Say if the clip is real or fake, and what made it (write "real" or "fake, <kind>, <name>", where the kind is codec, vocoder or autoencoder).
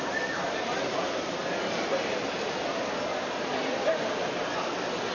real